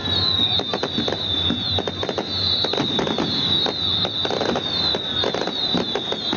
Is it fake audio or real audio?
real